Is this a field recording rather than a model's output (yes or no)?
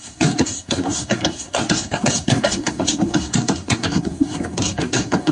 no